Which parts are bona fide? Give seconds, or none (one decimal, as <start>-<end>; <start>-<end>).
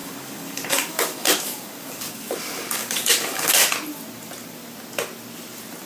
3.5-5.9